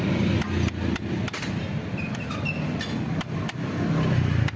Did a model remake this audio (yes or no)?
no